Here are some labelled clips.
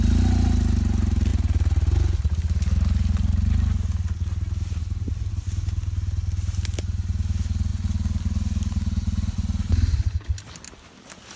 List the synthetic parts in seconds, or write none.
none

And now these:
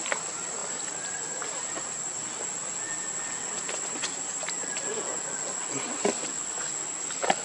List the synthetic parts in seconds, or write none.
none

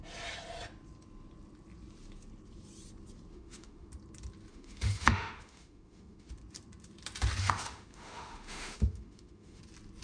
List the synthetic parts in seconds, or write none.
3.3-3.9; 4.5-6.3; 7.4-9.6